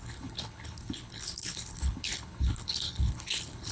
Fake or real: fake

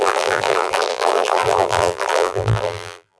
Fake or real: fake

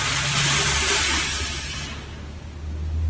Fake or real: real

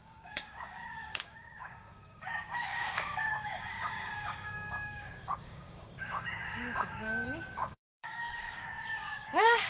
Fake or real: fake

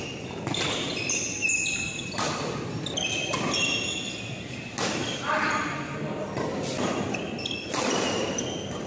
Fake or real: real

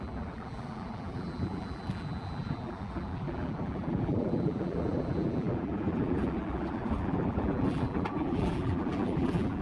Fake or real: fake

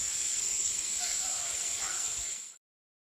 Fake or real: fake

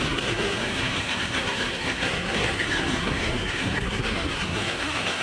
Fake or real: fake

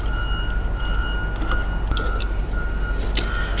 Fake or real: real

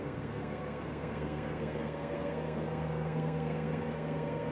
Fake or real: fake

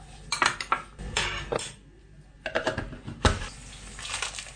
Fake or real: real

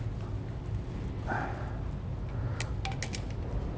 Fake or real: real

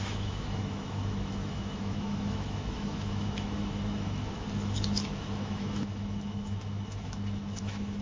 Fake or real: fake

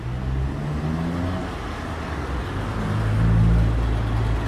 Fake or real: real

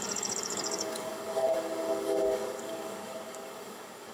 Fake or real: fake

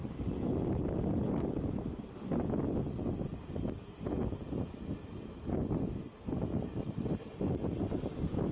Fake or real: real